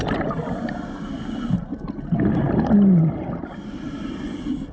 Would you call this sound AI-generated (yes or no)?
no